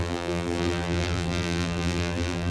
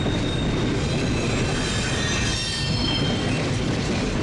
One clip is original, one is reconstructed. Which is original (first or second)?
second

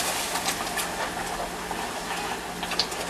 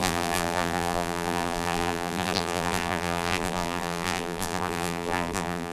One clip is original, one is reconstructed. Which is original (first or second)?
first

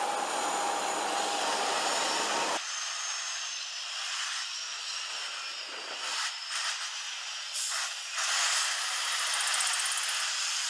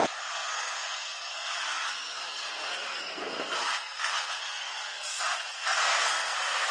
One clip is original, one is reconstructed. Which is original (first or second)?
first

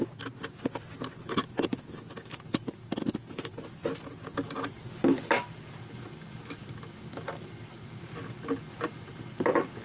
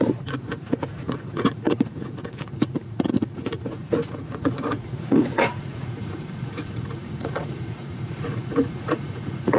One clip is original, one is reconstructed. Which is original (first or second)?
first